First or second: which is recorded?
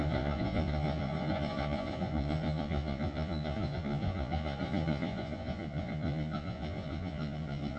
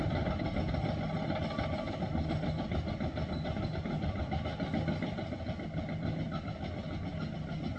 second